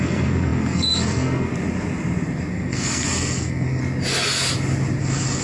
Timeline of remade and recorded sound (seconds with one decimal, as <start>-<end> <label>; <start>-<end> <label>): 0.0-1.5 remade; 1.5-2.5 recorded; 2.5-3.8 remade; 3.8-5.0 recorded; 5.0-5.4 remade